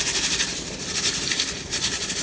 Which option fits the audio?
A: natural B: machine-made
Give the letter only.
B